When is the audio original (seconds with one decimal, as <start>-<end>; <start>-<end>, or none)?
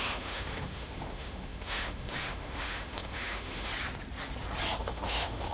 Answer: 3.7-4.8